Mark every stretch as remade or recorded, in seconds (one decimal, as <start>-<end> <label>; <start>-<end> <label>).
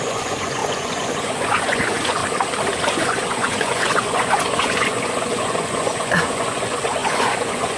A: 0.0-2.2 remade; 2.2-2.9 recorded; 2.9-7.8 remade